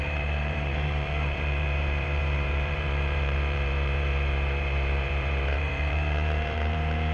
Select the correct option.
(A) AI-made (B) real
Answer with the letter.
A